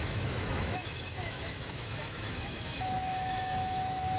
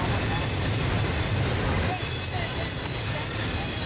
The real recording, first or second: second